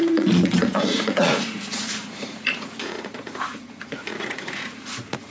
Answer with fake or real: fake